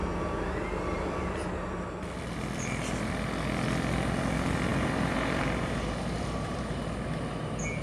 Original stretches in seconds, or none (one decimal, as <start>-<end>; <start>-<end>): 0.0-4.7; 6.8-7.8